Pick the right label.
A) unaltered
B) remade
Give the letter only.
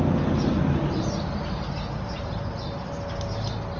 A